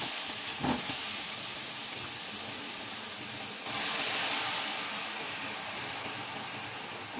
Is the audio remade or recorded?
recorded